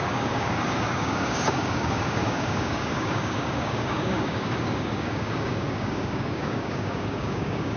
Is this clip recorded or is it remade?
remade